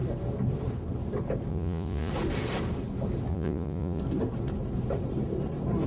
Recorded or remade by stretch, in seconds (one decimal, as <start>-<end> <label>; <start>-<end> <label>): 0.0-1.5 recorded; 1.5-2.1 remade; 2.1-3.3 recorded; 3.3-4.0 remade; 4.0-5.9 recorded